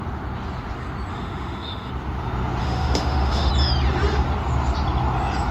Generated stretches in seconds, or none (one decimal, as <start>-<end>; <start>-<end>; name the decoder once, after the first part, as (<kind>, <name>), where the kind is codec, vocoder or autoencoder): 1.1-1.9 (autoencoder, DAC-VAE); 2.6-3.5